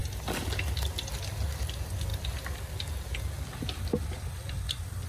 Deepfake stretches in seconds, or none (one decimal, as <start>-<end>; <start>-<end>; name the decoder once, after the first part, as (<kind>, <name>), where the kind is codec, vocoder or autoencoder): 0.0-2.1 (vocoder, BigVGAN v2); 3.6-5.1